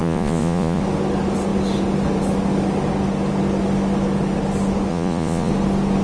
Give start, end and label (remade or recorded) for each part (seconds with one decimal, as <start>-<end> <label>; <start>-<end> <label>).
0.0-0.8 remade; 0.8-4.9 recorded; 4.9-5.5 remade; 5.5-6.0 recorded